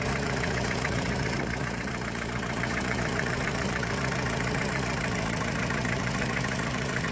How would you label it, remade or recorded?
remade